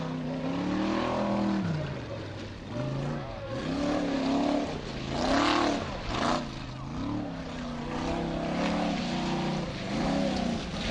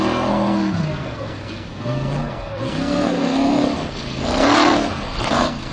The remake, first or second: second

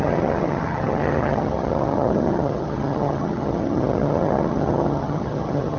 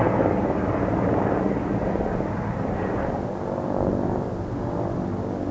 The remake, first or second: first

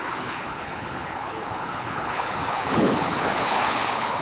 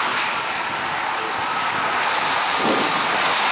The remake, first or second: first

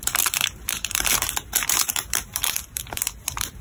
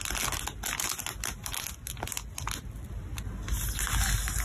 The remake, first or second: first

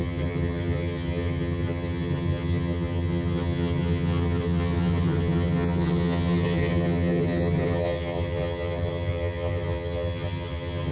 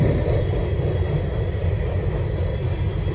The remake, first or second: first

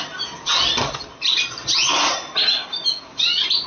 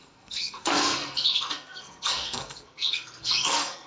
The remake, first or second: second